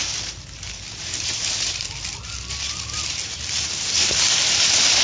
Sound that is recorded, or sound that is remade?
recorded